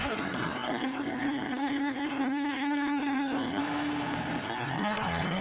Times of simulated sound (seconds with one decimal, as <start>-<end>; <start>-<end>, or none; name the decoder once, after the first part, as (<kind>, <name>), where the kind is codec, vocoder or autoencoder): 0.0-3.6 (codec, SNAC); 4.4-5.4